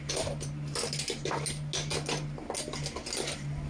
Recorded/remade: recorded